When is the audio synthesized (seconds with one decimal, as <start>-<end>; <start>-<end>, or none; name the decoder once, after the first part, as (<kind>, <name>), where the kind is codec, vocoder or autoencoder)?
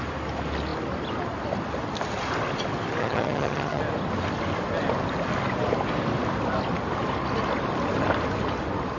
3.0-3.8 (vocoder, HiFi-GAN)